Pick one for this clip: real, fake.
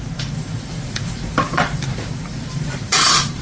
fake